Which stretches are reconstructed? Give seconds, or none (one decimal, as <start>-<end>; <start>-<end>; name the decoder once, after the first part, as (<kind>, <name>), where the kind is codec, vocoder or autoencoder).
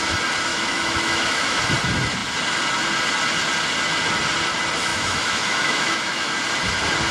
0.5-1.6 (autoencoder, DAC-VAE); 4.9-6.3